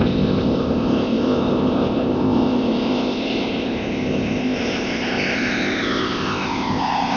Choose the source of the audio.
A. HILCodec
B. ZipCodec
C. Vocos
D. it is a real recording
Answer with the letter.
B